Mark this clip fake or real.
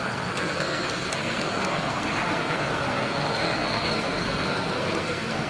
fake